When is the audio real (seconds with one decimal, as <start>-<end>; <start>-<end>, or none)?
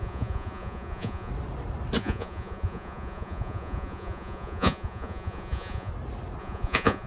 1.3-2.0; 5.9-6.4